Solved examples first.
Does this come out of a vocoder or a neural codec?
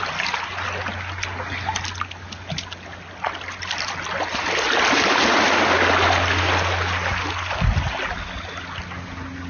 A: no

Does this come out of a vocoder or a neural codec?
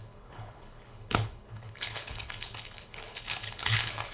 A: yes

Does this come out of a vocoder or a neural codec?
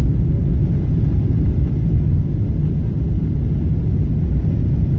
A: no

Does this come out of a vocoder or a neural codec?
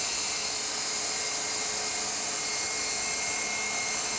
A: no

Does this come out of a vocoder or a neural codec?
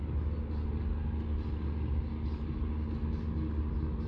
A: no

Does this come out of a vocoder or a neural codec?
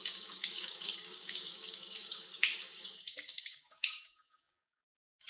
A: yes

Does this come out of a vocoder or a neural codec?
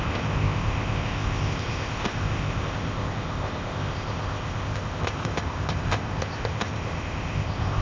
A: yes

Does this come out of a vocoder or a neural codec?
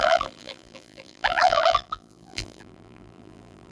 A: yes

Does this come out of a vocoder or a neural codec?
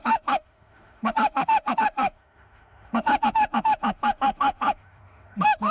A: yes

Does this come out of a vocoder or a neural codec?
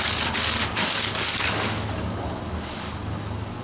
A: yes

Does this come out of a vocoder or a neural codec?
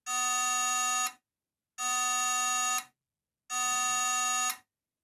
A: no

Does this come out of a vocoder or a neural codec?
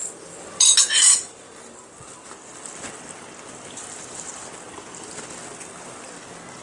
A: no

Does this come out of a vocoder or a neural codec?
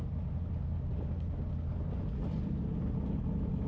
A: no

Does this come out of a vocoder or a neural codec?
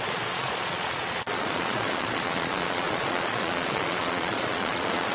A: yes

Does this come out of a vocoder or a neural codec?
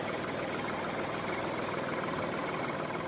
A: yes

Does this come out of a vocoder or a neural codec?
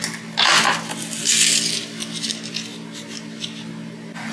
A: no